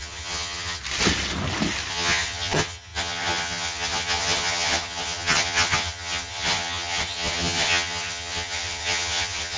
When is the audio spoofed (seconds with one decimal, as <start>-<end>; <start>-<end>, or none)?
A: 0.0-0.8; 1.9-9.6